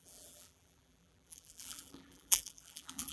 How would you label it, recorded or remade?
remade